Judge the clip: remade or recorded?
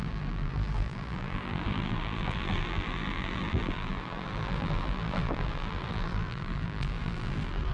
remade